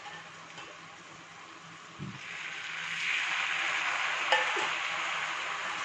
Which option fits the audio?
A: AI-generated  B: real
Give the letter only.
B